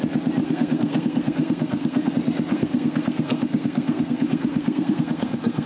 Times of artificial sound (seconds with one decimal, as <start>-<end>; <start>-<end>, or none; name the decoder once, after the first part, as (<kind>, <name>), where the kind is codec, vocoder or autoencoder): 0.4-2.1 (codec, SNAC); 2.5-5.7